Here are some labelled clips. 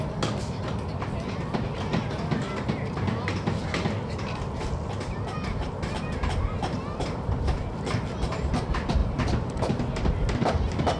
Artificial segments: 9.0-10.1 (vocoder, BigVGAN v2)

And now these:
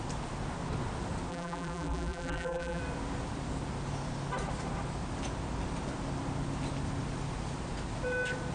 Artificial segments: 1.3-2.8 (vocoder, BigVGAN v2)

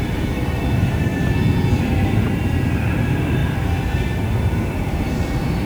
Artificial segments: 0.0-1.1 (vocoder, BigVGAN v2); 1.8-3.4; 4.3-5.7

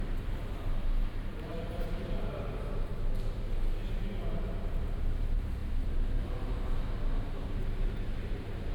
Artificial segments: 0.0-2.9 (vocoder, BigVGAN v2); 4.8-5.6; 7.1-8.7

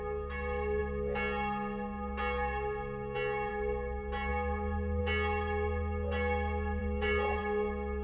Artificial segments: 6.8-7.4 (vocoder, BigVGAN v2)